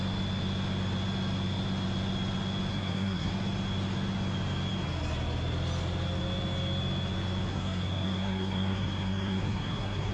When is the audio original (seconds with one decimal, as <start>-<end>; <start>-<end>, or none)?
0.0-2.7; 3.3-7.5